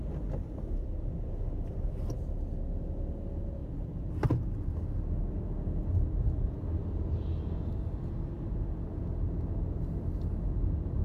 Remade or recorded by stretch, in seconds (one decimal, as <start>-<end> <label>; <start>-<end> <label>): 0.0-11.0 recorded